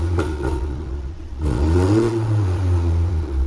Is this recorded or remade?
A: remade